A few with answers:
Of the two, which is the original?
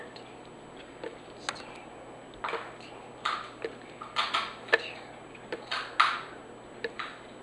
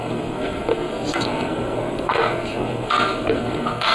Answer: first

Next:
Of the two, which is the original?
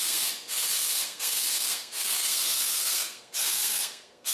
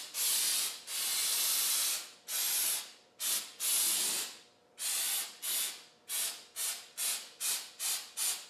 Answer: second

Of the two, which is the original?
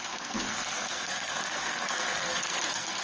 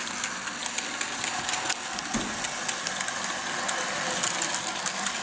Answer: second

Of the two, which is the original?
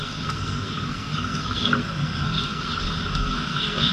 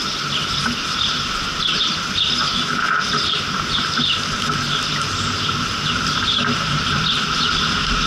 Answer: second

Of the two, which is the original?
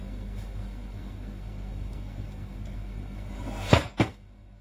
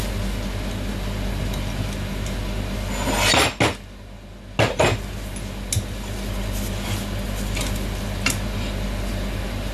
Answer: second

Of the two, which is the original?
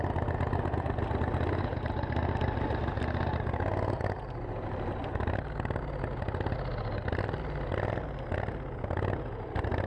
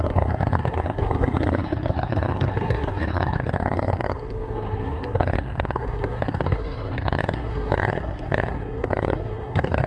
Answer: first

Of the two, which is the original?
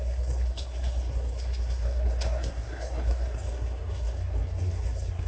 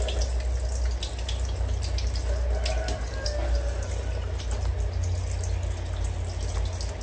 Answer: second